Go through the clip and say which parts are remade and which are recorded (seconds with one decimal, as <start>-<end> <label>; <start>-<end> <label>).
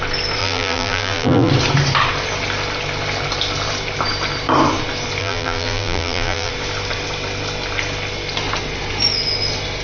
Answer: 0.0-0.4 recorded; 0.4-1.5 remade; 1.5-5.2 recorded; 5.2-6.5 remade; 6.5-9.8 recorded